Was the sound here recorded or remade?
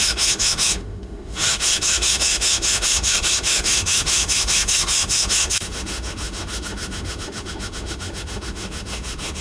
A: remade